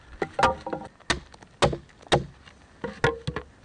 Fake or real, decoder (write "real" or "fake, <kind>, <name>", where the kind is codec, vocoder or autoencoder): real